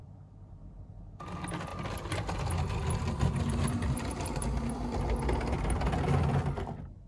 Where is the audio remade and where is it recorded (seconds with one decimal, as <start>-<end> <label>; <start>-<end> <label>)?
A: 0.0-7.1 recorded